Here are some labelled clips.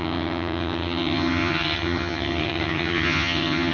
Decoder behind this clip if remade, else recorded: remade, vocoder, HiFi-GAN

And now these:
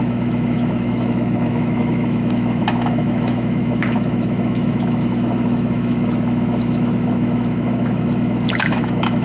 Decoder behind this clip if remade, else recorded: remade, autoencoder, DAC-VAE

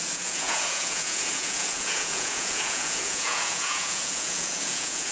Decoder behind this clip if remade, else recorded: remade, vocoder, Vocos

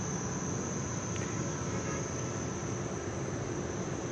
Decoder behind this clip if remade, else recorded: recorded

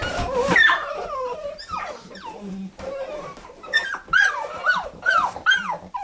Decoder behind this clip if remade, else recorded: remade, vocoder, BigVGAN v2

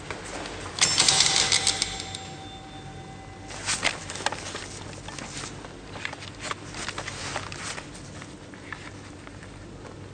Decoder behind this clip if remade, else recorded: recorded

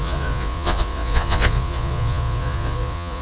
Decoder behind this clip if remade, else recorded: remade, vocoder, Vocos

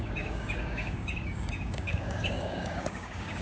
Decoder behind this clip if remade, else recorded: remade, codec, DAC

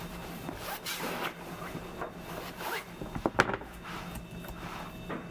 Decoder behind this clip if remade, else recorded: recorded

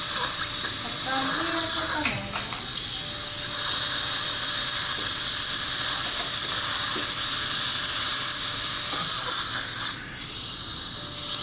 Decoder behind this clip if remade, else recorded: recorded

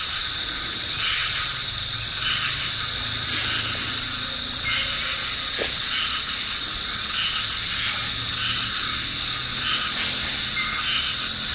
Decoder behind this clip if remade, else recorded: recorded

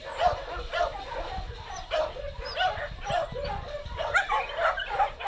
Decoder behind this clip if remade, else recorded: recorded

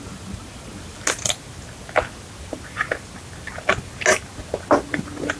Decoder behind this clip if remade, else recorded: recorded